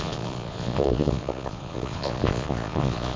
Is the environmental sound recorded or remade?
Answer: remade